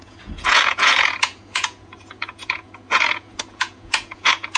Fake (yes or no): yes